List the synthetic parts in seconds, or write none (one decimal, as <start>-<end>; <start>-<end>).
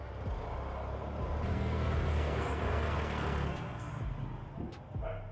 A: 1.5-3.9